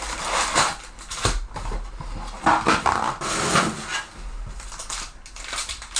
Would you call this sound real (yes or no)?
yes